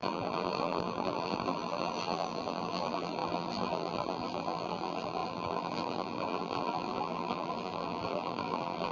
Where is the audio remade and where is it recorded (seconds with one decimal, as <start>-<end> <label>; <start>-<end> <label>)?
0.0-8.9 remade